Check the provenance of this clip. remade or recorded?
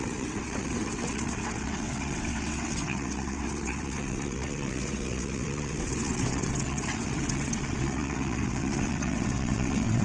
remade